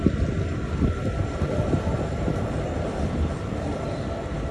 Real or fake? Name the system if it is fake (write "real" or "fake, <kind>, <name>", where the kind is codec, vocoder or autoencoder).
fake, vocoder, BigVGAN v2